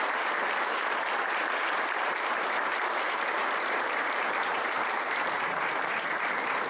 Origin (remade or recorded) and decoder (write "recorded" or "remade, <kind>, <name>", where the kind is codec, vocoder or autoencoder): remade, vocoder, BigVGAN v2